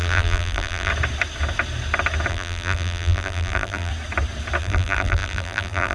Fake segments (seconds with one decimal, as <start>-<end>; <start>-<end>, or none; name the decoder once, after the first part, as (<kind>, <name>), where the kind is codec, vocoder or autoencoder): 0.0-0.9 (vocoder, BigVGAN v2); 2.3-3.9; 4.6-5.9